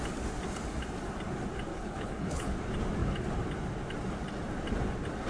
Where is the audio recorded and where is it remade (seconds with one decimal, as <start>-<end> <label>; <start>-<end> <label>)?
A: 0.0-1.7 recorded; 1.7-2.6 remade; 2.6-5.3 recorded